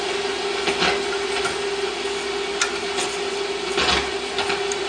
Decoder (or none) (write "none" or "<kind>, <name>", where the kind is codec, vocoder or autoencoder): none